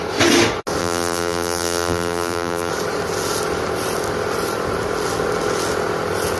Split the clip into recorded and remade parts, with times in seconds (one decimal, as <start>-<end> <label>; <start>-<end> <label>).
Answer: 0.0-0.8 recorded; 0.8-2.7 remade; 2.7-6.4 recorded